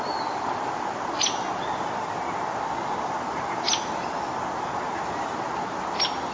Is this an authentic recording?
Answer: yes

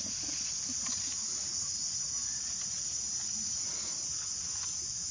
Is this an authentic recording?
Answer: yes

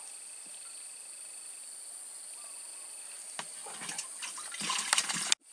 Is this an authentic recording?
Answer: yes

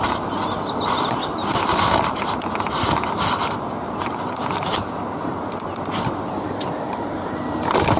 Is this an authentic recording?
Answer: yes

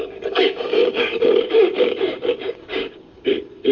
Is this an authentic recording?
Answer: no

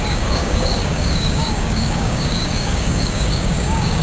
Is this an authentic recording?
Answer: no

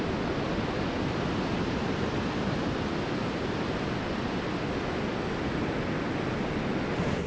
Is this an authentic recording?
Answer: yes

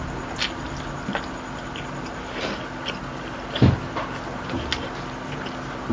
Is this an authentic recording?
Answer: yes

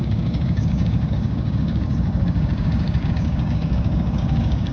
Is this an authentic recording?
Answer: no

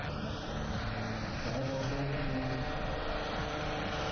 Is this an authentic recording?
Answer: yes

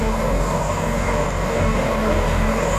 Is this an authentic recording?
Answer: no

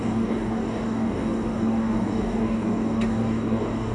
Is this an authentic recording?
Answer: no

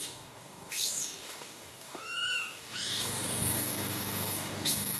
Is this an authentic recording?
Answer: no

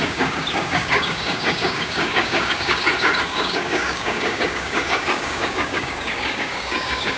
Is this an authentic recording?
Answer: no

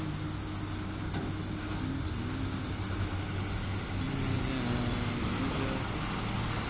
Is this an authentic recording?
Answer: yes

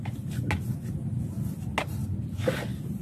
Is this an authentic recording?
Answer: yes